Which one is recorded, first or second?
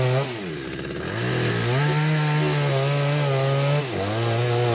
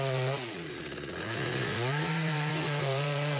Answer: first